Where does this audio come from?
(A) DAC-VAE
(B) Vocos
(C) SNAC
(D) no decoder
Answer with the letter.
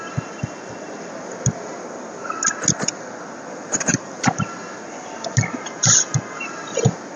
D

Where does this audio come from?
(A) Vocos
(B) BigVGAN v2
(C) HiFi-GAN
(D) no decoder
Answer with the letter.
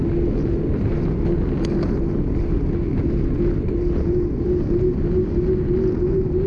D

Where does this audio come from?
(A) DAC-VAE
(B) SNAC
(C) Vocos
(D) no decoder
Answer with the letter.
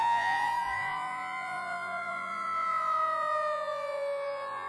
C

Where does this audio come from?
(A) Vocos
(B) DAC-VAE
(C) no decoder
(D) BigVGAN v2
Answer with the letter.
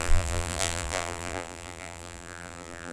D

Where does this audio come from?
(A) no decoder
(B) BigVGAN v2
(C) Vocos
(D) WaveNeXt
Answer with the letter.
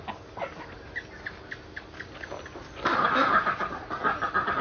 A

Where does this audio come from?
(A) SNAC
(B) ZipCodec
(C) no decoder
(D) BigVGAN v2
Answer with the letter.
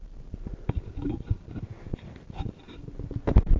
C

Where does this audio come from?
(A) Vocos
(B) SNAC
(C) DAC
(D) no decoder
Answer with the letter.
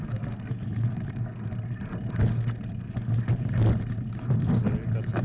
D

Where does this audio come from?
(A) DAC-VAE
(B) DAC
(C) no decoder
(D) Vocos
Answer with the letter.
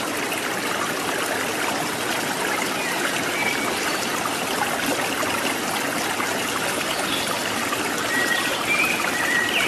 C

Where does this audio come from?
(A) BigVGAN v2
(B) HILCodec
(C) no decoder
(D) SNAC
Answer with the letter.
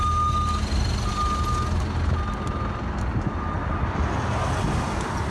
C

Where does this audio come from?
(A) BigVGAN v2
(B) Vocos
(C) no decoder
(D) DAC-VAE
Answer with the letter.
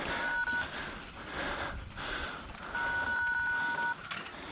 C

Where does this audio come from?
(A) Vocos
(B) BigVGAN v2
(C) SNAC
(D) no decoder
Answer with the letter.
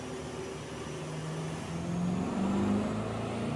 D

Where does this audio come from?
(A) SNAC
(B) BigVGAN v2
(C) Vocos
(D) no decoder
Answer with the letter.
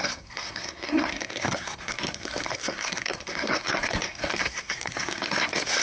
A